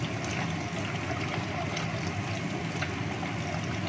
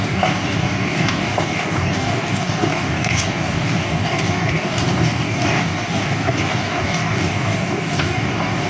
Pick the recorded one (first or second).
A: first